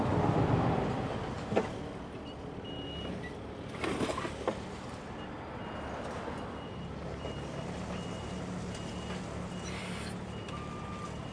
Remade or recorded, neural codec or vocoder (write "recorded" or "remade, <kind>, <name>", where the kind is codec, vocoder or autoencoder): recorded